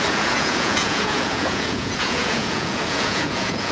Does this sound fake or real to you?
fake